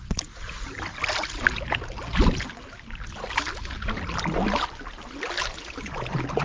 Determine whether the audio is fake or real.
real